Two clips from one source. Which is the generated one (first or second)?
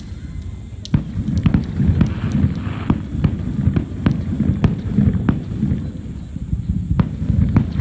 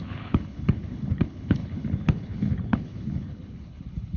second